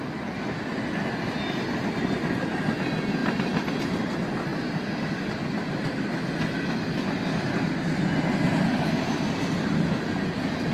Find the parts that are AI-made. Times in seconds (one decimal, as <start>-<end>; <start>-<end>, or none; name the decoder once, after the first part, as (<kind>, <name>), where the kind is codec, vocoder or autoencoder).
none